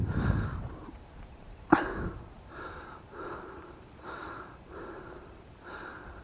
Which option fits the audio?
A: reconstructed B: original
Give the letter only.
A